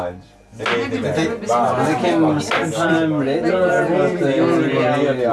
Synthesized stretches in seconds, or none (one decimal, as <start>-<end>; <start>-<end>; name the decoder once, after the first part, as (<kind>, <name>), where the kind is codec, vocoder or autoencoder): none

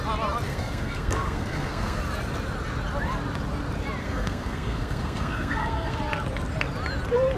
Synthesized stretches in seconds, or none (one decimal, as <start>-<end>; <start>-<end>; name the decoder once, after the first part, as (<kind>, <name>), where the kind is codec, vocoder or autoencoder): 0.5-2.0 (codec, SNAC); 4.0-6.0

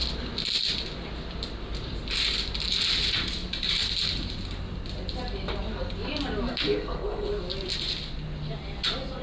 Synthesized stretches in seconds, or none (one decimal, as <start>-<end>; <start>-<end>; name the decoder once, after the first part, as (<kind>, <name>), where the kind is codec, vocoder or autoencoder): 6.5-7.3 (codec, SNAC)

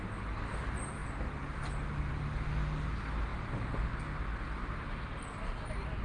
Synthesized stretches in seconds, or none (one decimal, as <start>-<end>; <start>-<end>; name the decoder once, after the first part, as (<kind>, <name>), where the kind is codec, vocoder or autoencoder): none

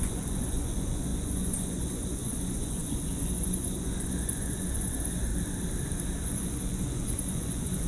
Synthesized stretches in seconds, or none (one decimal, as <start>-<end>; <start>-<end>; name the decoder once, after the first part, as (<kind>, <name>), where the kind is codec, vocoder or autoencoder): 0.0-5.3 (vocoder, Vocos); 6.2-7.9

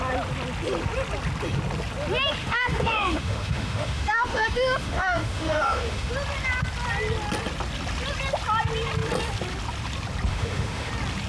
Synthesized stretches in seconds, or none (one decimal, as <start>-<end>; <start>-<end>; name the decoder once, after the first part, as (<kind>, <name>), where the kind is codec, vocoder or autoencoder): 2.4-6.1 (autoencoder, DAC-VAE); 10.3-10.9